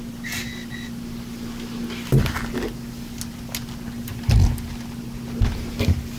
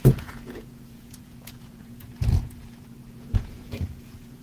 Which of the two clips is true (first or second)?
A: first